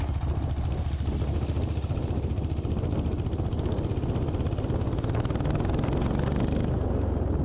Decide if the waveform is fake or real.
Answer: real